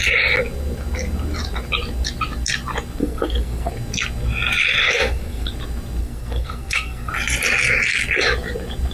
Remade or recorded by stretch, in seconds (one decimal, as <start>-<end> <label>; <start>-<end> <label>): 0.0-3.0 recorded; 3.0-3.7 remade; 3.7-4.8 recorded; 4.8-5.5 remade; 5.5-6.0 recorded; 6.0-7.1 remade; 7.1-8.9 recorded